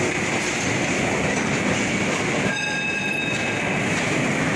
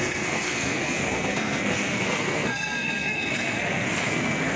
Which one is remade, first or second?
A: second